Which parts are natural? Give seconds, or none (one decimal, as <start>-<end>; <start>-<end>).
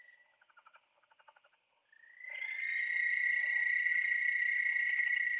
1.8-3.9